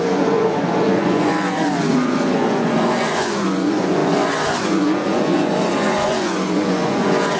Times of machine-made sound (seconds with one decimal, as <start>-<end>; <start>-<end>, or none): 0.0-7.4